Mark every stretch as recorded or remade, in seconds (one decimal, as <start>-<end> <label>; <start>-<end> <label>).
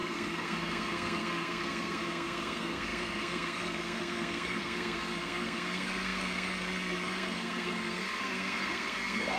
0.0-9.4 remade